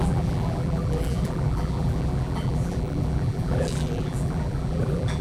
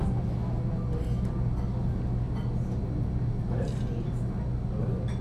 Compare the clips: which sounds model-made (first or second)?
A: first